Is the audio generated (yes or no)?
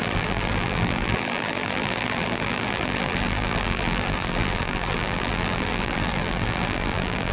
yes